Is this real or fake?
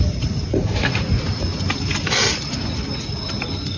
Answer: real